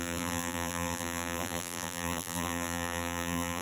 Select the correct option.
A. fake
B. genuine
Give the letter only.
A